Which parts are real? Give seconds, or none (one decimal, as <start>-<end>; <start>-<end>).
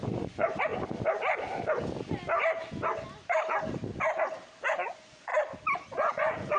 0.7-4.7; 5.3-5.9